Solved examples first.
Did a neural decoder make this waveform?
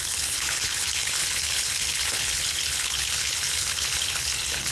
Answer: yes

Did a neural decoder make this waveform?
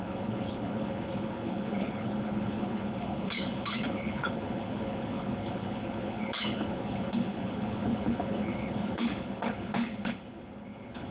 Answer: yes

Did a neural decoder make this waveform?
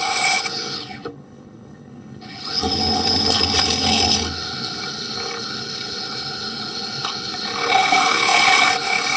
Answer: yes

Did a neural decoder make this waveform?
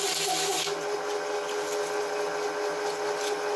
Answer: no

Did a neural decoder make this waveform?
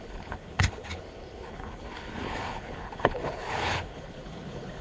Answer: yes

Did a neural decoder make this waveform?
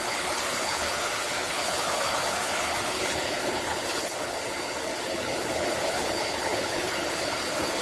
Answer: yes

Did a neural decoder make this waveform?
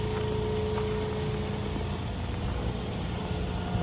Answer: no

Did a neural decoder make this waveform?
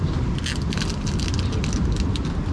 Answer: no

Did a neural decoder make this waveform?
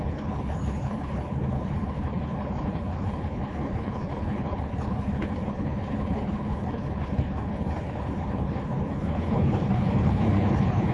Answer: yes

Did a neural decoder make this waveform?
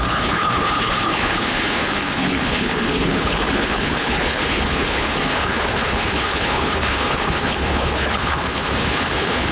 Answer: yes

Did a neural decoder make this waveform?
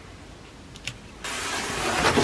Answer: no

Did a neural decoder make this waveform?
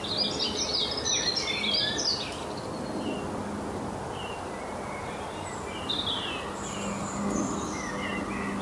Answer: no